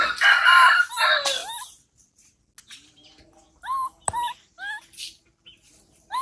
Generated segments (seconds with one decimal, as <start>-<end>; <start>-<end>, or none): none